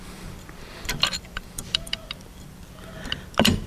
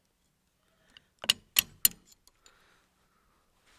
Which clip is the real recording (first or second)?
second